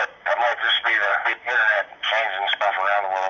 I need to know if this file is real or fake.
real